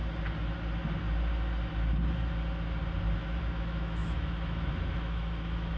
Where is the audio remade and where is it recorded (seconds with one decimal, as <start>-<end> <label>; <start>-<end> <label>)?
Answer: 0.0-3.5 recorded; 3.5-5.8 remade